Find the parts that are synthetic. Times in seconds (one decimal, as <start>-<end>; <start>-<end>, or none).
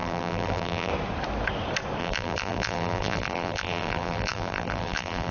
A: 0.0-0.9; 2.0-5.3